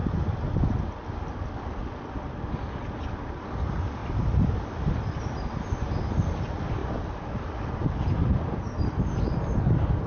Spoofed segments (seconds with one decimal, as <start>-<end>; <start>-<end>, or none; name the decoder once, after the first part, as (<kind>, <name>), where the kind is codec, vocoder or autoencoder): 4.0-5.2 (vocoder, BigVGAN v2); 6.8-8.6

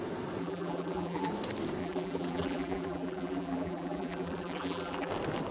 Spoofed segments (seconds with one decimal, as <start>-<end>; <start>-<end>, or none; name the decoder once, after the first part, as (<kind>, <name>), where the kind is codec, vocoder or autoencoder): 0.4-1.3 (vocoder, BigVGAN v2); 1.8-5.1

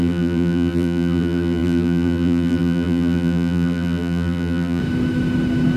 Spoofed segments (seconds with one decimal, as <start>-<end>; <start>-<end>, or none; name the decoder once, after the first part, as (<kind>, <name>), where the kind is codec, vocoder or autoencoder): 0.0-4.8 (vocoder, BigVGAN v2)

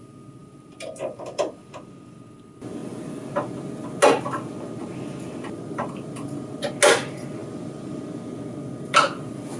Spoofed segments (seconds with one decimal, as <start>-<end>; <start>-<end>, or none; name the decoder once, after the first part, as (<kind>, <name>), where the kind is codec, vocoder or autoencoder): 0.4-2.2 (vocoder, BigVGAN v2); 4.8-6.5; 7.4-8.0